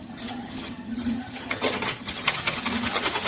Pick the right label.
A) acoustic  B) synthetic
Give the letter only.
B